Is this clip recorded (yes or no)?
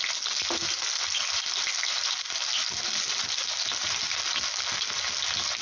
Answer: yes